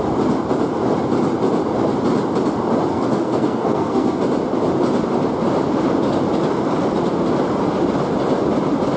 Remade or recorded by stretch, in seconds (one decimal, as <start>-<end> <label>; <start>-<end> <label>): 0.0-2.9 recorded; 2.9-4.2 remade; 4.2-9.0 recorded